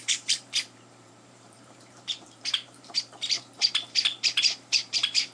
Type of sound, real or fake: fake